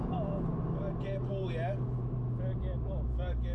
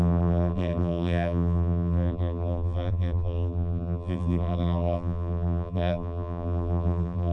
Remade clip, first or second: second